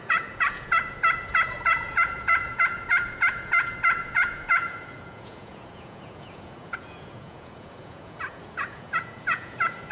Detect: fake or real fake